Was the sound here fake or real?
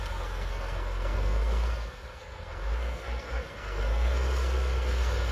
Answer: fake